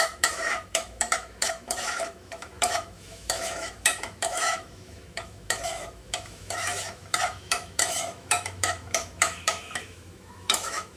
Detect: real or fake fake